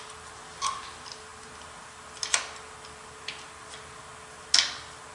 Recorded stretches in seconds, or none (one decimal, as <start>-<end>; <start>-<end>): 0.0-5.1